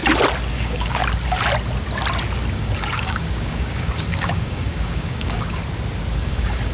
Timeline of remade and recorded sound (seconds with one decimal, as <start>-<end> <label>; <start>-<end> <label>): 0.0-0.5 recorded; 0.5-1.0 remade; 1.0-2.5 recorded; 2.5-5.6 remade; 5.6-6.2 recorded; 6.2-6.7 remade